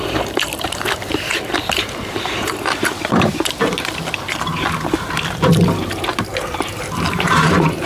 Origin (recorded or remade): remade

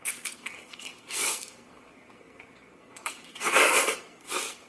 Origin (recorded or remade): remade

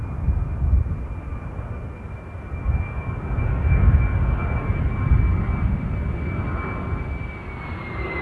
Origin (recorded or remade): recorded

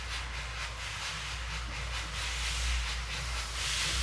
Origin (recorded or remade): recorded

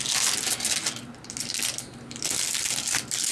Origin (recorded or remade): recorded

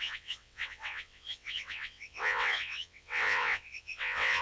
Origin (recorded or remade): remade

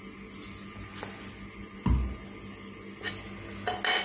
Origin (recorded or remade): recorded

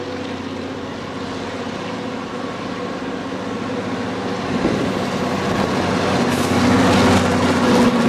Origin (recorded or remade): recorded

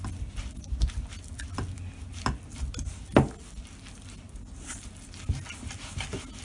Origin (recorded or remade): recorded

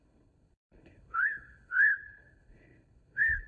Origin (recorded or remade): remade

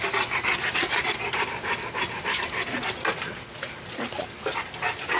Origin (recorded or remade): recorded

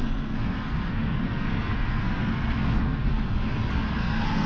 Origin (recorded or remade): remade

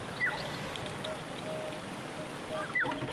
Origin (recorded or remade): recorded